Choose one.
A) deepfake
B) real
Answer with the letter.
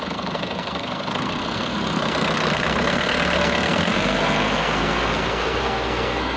A